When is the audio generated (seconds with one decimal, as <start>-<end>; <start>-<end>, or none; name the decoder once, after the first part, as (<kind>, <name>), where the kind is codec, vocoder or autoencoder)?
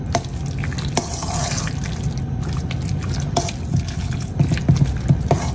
3.7-4.3 (codec, HILCodec)